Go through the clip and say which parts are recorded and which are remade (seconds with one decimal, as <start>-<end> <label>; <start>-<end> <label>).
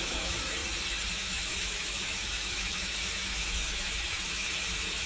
0.0-0.6 remade; 0.6-1.1 recorded; 1.1-5.1 remade